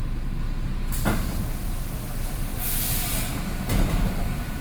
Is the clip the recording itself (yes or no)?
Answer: yes